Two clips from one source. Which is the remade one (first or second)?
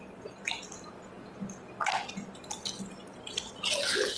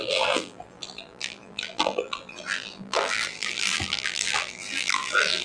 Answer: second